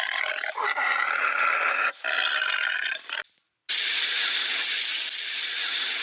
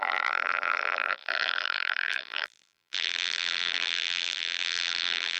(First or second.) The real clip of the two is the first